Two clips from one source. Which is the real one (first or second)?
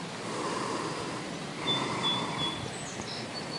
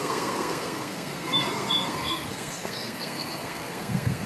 first